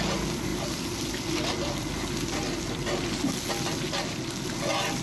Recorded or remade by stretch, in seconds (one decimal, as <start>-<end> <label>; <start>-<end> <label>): 0.0-5.0 recorded